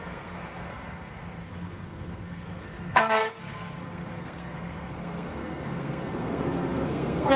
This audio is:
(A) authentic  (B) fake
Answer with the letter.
B